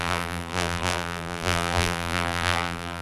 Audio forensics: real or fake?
fake